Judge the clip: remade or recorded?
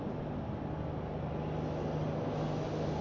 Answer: recorded